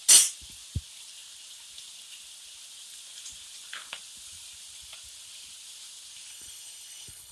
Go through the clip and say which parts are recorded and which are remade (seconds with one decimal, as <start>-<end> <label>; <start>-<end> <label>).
0.0-6.3 recorded; 6.3-7.3 remade